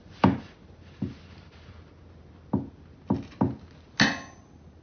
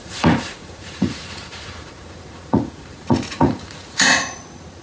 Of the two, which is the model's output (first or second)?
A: second